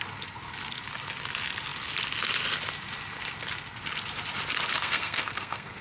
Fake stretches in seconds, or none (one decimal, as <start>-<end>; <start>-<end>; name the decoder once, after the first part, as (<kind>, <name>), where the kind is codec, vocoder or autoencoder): 4.8-5.8 (codec, SNAC)